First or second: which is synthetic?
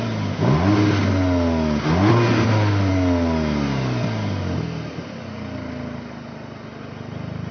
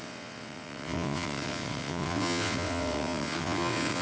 second